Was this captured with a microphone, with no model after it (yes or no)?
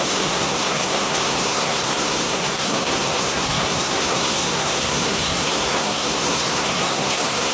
no